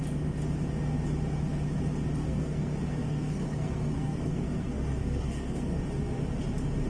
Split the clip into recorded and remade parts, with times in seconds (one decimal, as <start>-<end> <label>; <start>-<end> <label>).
0.0-2.2 recorded; 2.2-5.8 remade; 5.8-6.9 recorded